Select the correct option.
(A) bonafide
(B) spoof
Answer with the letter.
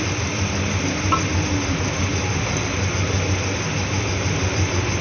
A